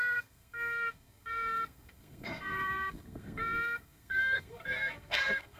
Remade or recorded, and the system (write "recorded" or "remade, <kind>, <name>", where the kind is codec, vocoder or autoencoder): remade, codec, SNAC